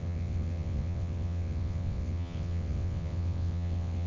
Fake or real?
fake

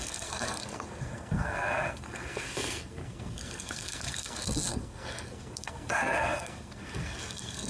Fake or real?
fake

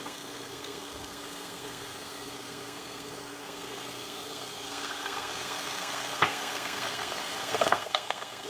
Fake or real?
fake